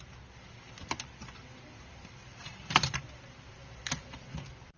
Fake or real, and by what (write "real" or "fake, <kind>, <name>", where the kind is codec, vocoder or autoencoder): fake, vocoder, BigVGAN v2